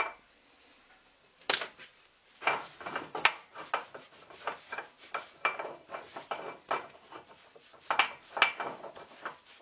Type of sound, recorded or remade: recorded